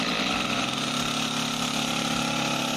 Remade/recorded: recorded